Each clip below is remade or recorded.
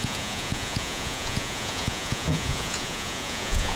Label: remade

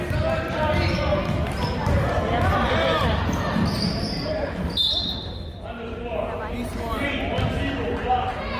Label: recorded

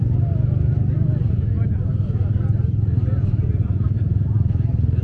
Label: recorded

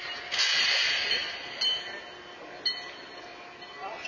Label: recorded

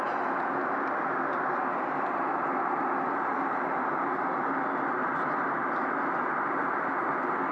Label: recorded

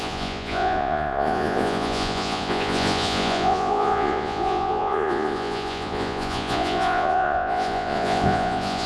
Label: remade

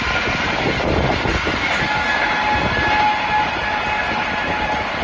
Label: recorded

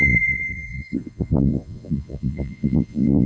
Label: remade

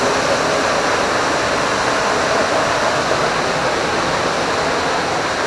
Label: recorded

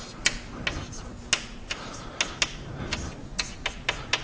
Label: recorded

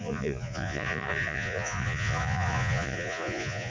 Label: remade